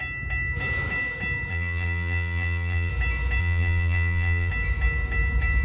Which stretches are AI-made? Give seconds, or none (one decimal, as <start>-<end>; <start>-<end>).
1.5-2.9; 3.4-4.5